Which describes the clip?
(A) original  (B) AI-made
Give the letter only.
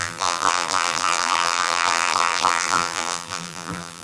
B